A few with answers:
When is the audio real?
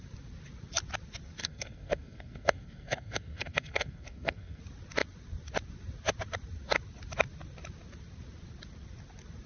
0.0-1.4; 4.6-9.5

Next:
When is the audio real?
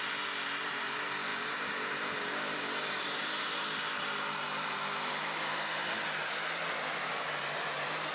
0.0-8.1